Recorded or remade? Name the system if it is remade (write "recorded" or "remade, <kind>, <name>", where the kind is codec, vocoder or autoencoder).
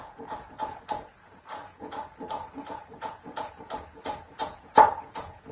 remade, vocoder, Vocos